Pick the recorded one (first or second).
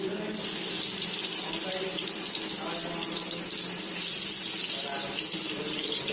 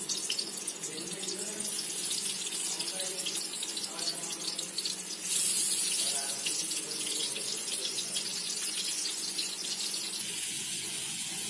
first